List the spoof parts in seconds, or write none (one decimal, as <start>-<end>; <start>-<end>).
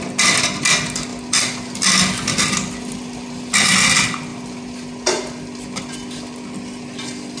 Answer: 1.1-3.7; 4.3-5.8